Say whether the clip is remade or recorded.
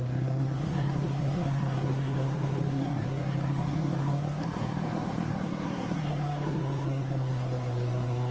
remade